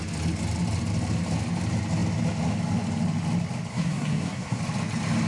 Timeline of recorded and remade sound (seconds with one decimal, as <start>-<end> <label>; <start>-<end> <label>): 0.0-3.7 recorded; 3.7-4.6 remade; 4.6-5.3 recorded